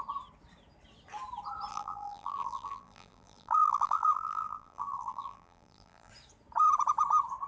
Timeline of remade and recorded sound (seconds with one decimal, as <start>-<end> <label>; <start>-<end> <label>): 0.0-1.7 recorded; 1.7-6.1 remade; 6.1-7.5 recorded

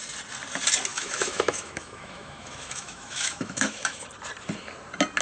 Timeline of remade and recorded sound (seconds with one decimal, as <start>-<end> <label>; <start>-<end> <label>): 0.0-0.9 recorded; 0.9-4.0 remade; 4.0-5.2 recorded

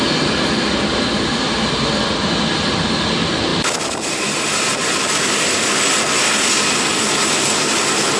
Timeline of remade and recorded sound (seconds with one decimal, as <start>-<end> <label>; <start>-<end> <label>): 0.0-3.5 recorded; 3.5-5.1 remade; 5.1-8.2 recorded